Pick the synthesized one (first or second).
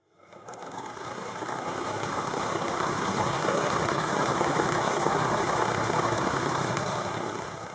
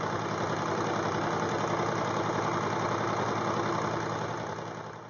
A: first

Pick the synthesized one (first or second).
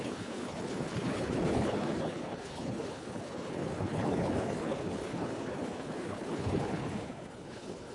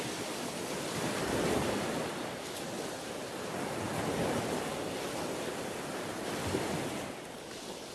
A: first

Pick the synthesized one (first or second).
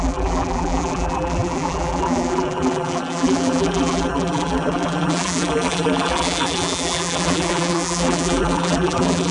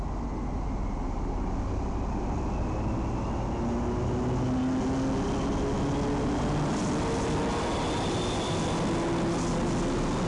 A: first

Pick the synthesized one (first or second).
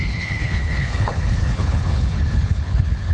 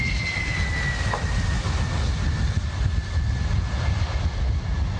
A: first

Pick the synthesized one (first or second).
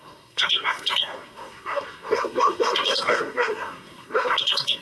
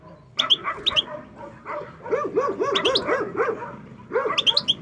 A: first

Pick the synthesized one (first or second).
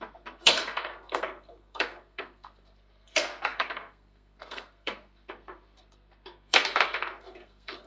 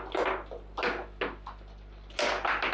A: first